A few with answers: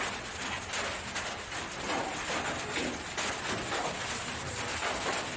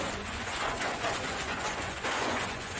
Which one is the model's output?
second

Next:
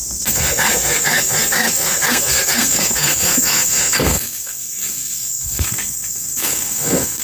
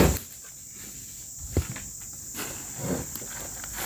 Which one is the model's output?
first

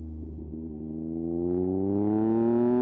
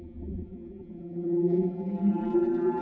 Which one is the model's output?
second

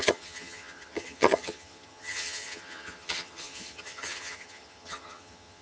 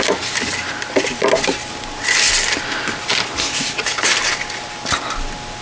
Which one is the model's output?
first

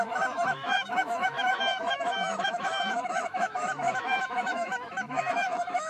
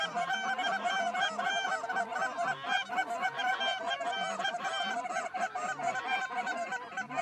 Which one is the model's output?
first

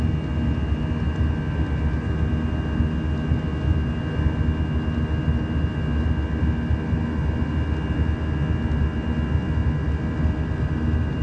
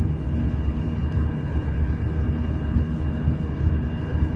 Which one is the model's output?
second